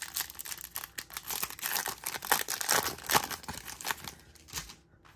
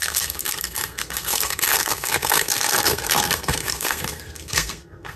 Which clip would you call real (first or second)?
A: first